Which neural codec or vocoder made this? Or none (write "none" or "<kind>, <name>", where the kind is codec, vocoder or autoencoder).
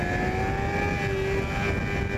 none